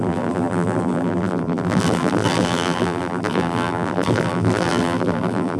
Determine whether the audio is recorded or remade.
remade